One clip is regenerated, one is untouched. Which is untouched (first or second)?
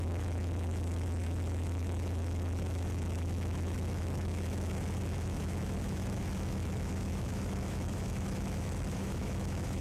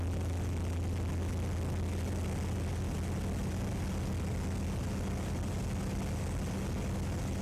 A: second